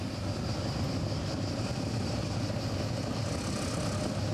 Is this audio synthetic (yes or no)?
no